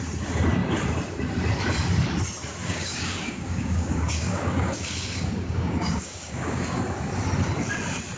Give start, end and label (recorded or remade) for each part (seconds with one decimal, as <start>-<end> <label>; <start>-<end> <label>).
0.0-2.6 recorded; 2.6-6.8 remade; 6.8-8.2 recorded